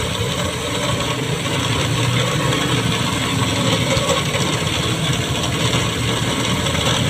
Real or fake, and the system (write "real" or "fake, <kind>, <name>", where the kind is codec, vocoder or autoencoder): real